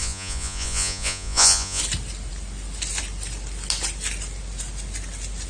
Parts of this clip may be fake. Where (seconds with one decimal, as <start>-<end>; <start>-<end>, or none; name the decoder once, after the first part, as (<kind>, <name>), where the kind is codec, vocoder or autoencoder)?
0.0-1.8 (vocoder, Vocos)